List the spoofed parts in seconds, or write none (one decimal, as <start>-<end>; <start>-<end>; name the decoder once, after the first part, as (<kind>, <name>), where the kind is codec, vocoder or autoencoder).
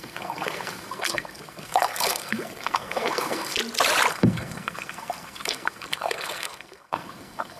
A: 0.0-3.6 (codec, SNAC); 4.1-7.6